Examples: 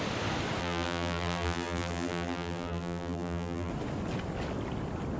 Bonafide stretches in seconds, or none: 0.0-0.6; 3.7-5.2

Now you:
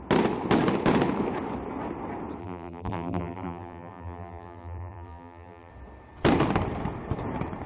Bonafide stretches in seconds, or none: 0.0-2.4; 5.7-7.7

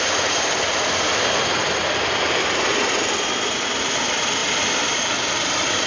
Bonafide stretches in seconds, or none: 0.0-5.9

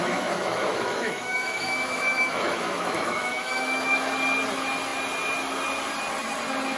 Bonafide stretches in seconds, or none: 4.1-6.8

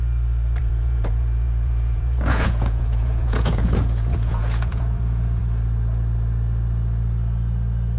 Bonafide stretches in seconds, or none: 0.0-0.6; 5.4-8.0